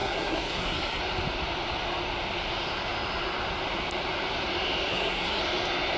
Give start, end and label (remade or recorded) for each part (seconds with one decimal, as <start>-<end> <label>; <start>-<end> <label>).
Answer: 0.0-1.0 remade; 1.0-4.9 recorded; 4.9-5.4 remade; 5.4-6.0 recorded